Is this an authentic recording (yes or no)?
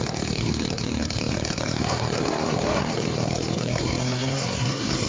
no